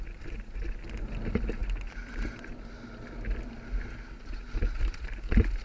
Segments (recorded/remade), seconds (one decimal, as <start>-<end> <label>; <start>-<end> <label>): 0.0-5.6 recorded